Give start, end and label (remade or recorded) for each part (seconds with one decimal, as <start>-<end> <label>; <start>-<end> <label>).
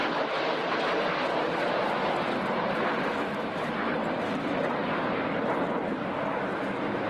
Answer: 0.0-7.1 recorded